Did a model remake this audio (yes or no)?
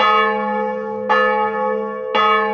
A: no